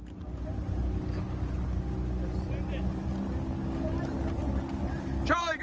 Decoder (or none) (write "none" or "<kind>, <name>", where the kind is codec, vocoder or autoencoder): none